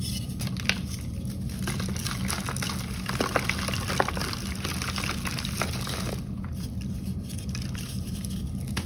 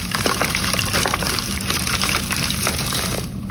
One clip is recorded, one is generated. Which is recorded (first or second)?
first